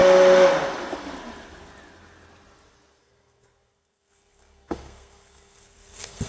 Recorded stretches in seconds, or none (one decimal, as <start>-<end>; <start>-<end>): 0.0-3.0